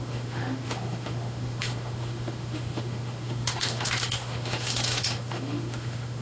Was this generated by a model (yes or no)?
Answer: yes